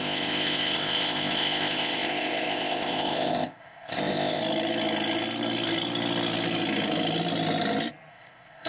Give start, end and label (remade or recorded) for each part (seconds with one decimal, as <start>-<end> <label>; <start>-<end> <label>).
0.0-4.4 remade; 4.4-8.1 recorded; 8.1-8.7 remade